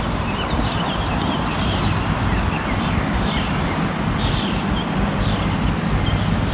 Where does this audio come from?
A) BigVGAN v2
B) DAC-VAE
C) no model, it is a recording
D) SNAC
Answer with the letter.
C